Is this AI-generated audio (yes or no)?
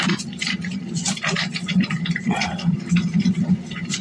yes